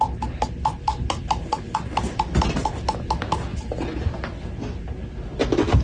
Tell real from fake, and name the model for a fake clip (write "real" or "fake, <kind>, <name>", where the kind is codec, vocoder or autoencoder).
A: real